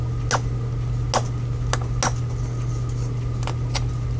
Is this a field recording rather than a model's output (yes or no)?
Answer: yes